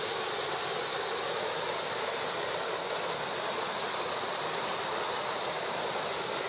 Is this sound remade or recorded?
remade